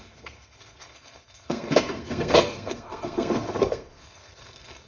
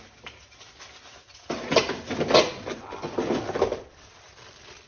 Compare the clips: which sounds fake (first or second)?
first